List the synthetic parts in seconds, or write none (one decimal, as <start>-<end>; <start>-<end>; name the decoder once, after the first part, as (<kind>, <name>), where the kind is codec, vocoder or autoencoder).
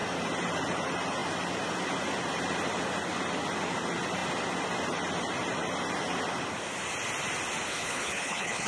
7.7-8.7 (codec, HILCodec)